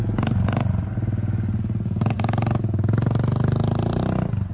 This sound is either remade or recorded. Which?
recorded